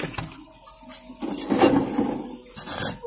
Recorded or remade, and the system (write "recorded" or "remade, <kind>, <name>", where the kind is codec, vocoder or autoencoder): recorded